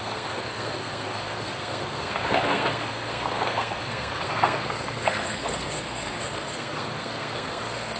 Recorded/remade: remade